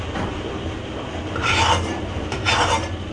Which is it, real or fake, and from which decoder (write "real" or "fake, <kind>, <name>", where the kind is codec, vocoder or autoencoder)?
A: real